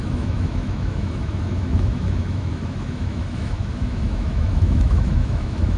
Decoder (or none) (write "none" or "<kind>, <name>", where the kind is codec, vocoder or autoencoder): autoencoder, DAC-VAE